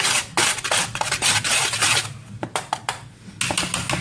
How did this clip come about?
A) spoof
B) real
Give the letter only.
B